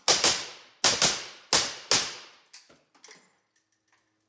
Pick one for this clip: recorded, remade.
recorded